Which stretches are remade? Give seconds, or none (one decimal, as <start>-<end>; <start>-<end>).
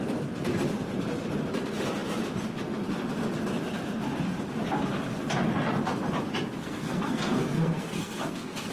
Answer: 6.6-8.7